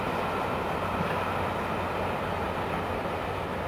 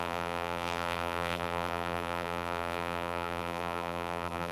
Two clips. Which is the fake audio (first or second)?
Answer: second